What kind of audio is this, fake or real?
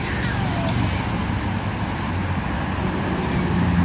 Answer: real